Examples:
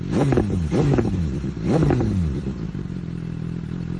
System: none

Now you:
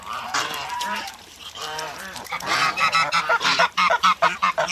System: vocoder, BigVGAN v2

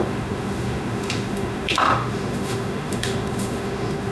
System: autoencoder, DAC-VAE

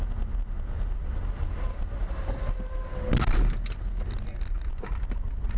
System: none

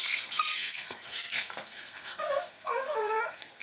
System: codec, SNAC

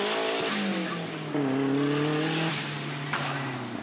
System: none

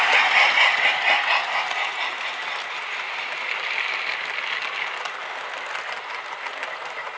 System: none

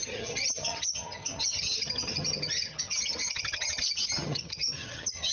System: vocoder, HiFi-GAN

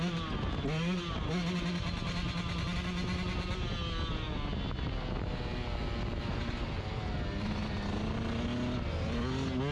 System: none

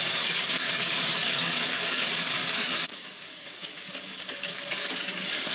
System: codec, DAC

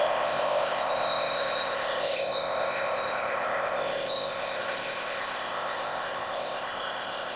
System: codec, ZipCodec